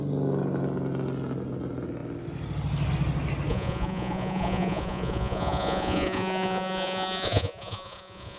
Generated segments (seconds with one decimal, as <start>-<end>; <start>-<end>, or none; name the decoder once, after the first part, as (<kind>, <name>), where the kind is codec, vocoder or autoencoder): 3.5-8.4 (vocoder, Vocos)